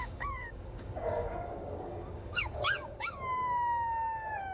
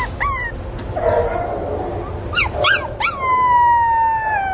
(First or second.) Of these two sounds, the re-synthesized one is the first